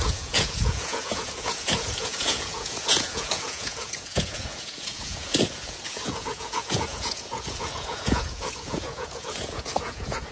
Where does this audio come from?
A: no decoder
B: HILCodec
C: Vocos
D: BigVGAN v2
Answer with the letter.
C